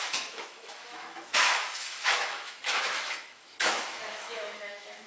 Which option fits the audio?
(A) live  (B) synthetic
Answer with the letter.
B